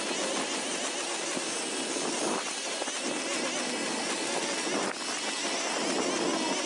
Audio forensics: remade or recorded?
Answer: recorded